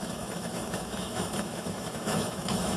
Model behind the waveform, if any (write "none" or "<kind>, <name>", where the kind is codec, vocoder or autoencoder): autoencoder, DAC-VAE